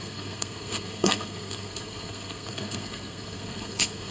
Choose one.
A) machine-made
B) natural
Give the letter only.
A